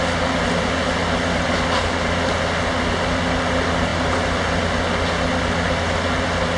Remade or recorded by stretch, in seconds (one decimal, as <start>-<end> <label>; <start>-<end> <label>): 0.0-6.6 recorded